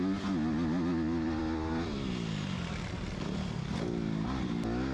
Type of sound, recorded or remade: recorded